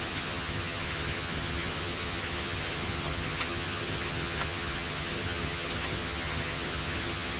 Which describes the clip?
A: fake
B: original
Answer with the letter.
A